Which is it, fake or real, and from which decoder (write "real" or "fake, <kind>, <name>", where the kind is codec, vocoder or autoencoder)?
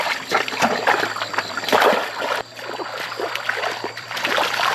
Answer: fake, vocoder, BigVGAN v2